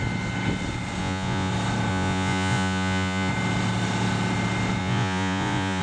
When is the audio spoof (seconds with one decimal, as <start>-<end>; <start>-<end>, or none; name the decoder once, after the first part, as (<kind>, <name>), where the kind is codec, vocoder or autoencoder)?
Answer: 1.0-1.5 (vocoder, Vocos); 1.9-3.3; 4.8-5.8